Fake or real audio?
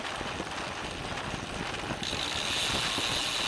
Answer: real